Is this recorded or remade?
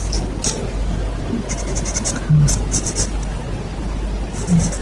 recorded